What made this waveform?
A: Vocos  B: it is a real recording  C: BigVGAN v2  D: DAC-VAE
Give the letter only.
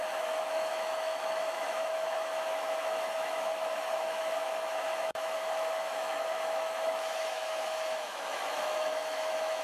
D